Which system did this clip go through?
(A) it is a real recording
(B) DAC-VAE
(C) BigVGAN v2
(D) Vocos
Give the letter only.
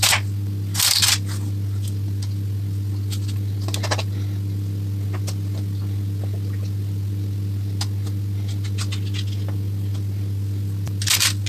A